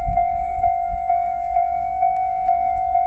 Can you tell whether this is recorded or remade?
remade